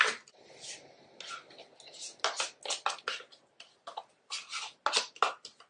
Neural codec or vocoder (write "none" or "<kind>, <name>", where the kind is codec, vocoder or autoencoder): none